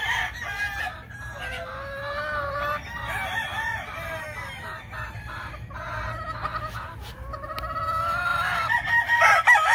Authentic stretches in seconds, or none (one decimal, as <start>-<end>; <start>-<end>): 0.0-9.7